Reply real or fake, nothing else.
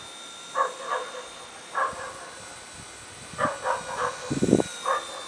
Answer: real